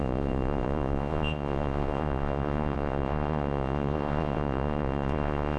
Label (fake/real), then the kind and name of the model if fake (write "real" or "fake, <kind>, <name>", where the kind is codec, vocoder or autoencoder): fake, vocoder, Vocos